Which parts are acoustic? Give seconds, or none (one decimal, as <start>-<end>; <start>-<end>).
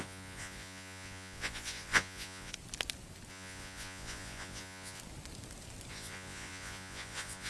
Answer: 2.5-3.3; 5.0-5.9